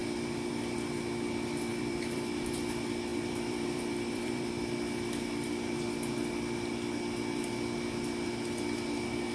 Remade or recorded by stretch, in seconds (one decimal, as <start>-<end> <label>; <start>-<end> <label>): 0.0-1.7 recorded; 1.7-2.4 remade; 2.4-3.1 recorded; 3.1-4.5 remade; 4.5-9.3 recorded